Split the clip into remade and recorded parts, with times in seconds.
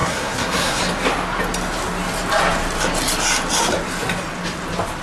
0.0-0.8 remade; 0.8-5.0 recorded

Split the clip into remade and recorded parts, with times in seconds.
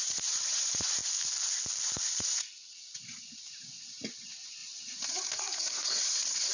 0.0-1.0 remade; 1.0-2.2 recorded; 2.2-6.5 remade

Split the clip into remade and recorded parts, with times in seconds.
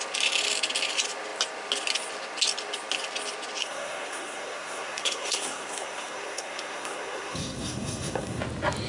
0.0-3.6 recorded; 3.6-8.4 remade; 8.4-8.9 recorded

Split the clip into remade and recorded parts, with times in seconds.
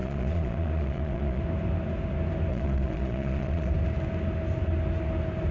0.0-1.4 remade; 1.4-2.5 recorded; 2.5-3.7 remade; 3.7-5.5 recorded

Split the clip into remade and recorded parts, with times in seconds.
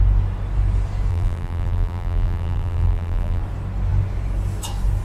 0.0-1.1 recorded; 1.1-3.4 remade; 3.4-5.0 recorded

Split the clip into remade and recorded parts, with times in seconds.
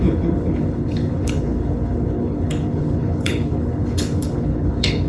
0.0-5.1 remade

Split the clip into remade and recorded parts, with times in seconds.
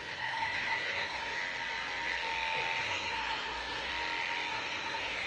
0.0-1.4 remade; 1.4-2.8 recorded; 2.8-3.9 remade; 3.9-4.5 recorded; 4.5-5.3 remade